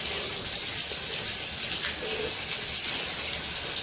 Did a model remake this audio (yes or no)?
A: no